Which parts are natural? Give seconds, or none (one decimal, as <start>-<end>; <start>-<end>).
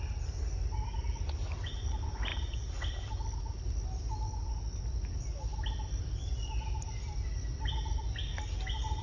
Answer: 0.0-2.3; 3.1-9.0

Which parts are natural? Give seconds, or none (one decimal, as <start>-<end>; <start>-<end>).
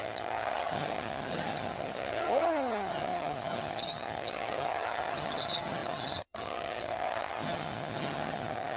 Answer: none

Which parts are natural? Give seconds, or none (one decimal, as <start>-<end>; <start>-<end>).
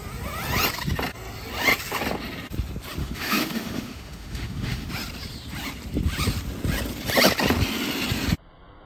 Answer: 0.0-3.0; 4.9-8.9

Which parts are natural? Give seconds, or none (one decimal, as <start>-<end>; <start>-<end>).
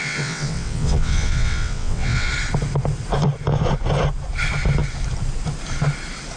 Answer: 2.3-6.4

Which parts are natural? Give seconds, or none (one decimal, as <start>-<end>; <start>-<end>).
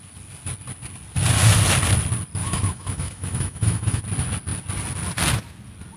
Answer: 0.0-2.4; 4.0-6.0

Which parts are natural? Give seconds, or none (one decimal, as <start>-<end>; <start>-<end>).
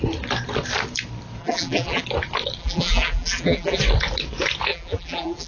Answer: 0.0-1.4; 2.0-2.6; 3.8-4.7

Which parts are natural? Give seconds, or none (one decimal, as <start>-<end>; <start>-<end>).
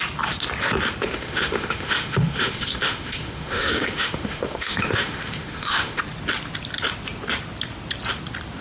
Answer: 0.0-1.0; 6.0-8.6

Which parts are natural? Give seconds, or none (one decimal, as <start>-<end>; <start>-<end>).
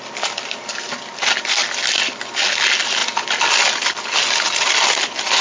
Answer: 0.0-5.4